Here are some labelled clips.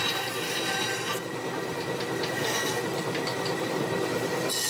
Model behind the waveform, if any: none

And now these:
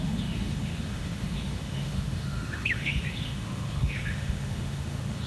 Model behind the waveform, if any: autoencoder, DAC-VAE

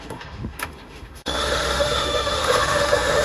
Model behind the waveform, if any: autoencoder, DAC-VAE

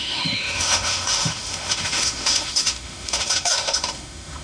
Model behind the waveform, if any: autoencoder, DAC-VAE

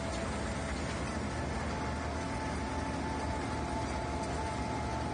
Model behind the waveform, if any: none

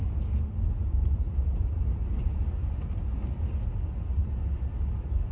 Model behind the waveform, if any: none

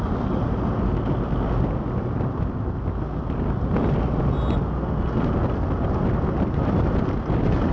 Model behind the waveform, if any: none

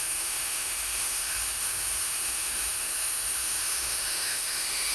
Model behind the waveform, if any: autoencoder, DAC-VAE